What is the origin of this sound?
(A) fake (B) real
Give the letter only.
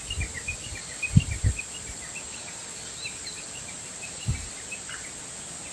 B